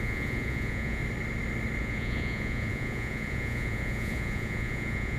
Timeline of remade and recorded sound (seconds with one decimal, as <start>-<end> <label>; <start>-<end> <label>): 0.0-1.0 remade; 1.0-1.8 recorded; 1.8-5.2 remade